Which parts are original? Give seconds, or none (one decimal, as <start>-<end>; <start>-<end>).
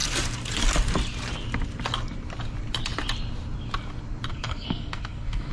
0.0-4.3